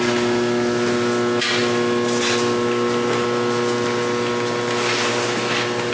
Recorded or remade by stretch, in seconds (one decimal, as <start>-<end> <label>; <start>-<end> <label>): 0.0-5.9 recorded